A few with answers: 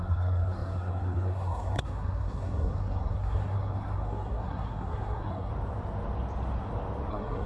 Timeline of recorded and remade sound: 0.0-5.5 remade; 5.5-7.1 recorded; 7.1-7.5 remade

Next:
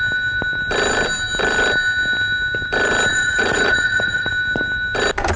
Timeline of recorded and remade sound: 0.0-3.1 recorded; 3.1-4.3 remade; 4.3-5.4 recorded

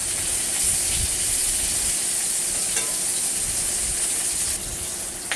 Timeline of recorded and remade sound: 0.0-0.6 remade; 0.6-5.4 recorded

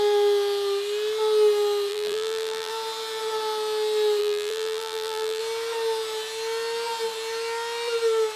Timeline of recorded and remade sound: 0.0-1.9 recorded; 1.9-2.7 remade; 2.7-4.2 recorded; 4.2-5.4 remade; 5.4-8.4 recorded